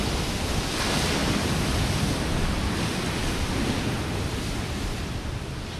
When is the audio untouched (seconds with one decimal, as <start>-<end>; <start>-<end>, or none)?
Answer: 0.0-5.8